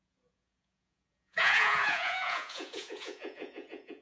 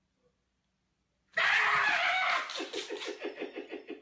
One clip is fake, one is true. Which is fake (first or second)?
first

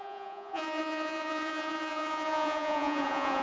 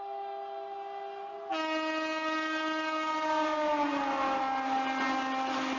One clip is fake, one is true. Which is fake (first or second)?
first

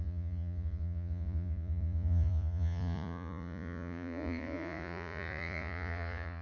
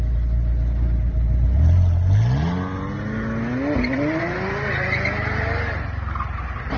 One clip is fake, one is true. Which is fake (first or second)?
first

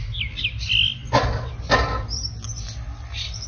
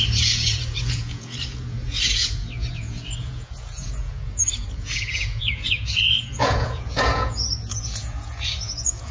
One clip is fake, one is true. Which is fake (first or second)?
second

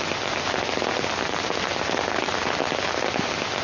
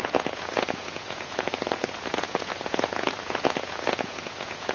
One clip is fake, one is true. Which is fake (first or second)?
second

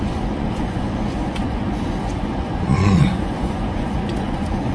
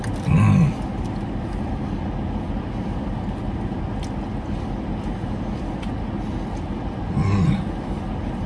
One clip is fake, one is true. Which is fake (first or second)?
first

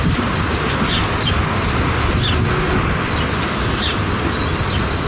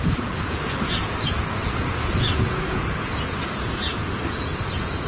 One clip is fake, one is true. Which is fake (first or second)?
second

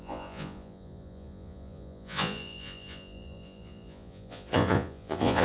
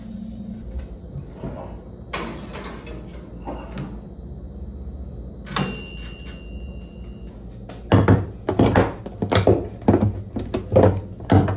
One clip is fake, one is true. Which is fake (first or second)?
first